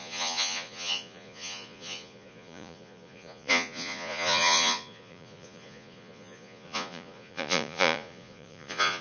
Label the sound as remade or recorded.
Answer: remade